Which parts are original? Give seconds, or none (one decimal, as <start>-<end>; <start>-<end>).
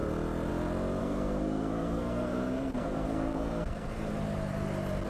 0.0-1.0; 4.1-5.1